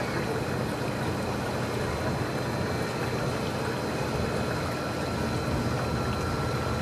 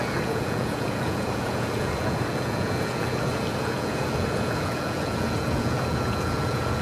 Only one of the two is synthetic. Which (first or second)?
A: second